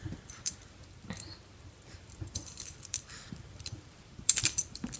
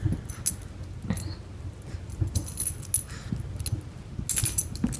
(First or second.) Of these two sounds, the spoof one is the first